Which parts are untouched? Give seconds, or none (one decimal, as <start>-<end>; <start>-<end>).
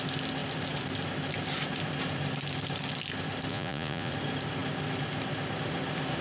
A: 0.0-3.5; 4.1-6.2